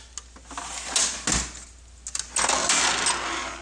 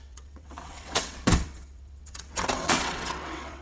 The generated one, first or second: second